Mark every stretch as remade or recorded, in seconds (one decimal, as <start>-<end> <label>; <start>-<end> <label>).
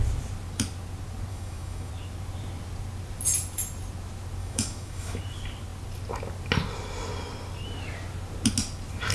0.0-1.3 recorded; 1.3-1.9 remade; 1.9-4.4 recorded; 4.4-5.2 remade; 5.2-9.1 recorded